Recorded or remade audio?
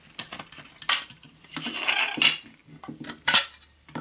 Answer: recorded